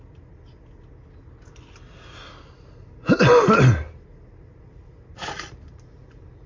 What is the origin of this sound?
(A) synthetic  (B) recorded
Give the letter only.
B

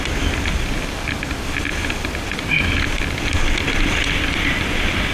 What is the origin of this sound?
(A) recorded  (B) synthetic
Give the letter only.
A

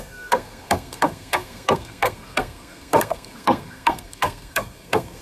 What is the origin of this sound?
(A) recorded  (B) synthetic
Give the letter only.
B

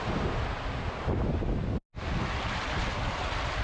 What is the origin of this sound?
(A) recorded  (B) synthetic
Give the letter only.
A